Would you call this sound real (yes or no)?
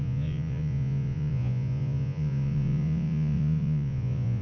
no